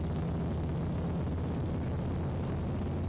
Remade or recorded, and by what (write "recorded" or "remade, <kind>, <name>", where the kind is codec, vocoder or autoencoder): recorded